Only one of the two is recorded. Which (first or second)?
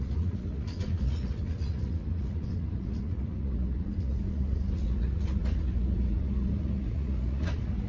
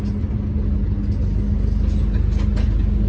second